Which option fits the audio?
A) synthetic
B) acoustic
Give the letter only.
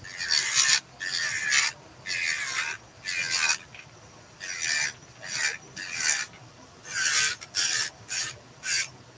B